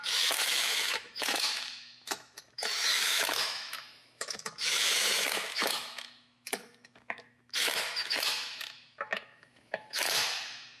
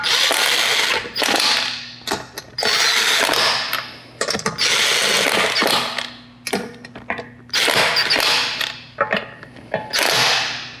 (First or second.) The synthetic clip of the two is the first